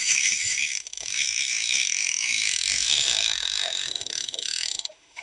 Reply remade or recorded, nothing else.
remade